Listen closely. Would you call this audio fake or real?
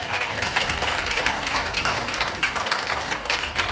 fake